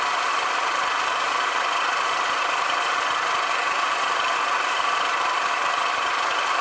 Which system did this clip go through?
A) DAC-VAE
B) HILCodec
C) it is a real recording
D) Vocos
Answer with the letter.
C